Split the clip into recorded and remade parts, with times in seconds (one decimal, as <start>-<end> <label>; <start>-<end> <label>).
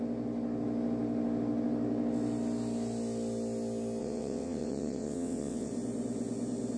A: 0.0-4.0 recorded; 4.0-5.7 remade; 5.7-6.8 recorded